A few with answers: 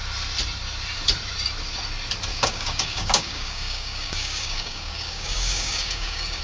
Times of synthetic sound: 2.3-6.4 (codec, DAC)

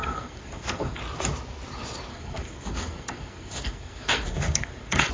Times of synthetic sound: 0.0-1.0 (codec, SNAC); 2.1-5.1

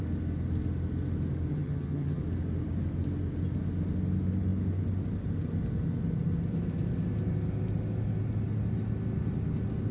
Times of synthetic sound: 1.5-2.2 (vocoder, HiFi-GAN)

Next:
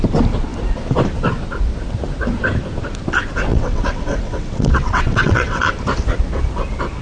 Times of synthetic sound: 3.5-5.7 (vocoder, WaveNeXt)

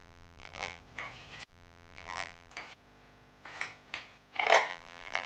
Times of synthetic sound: 0.0-0.8 (vocoder, BigVGAN v2); 1.5-2.5; 4.7-5.3

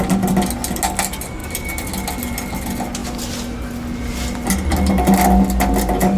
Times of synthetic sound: none